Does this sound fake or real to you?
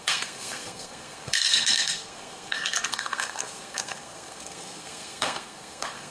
fake